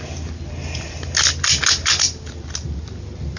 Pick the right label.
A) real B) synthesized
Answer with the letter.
A